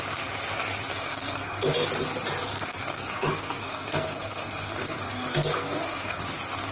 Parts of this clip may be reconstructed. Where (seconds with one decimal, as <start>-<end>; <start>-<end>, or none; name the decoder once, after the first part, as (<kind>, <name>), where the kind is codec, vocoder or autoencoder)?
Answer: 0.9-1.7 (codec, SNAC); 2.5-6.2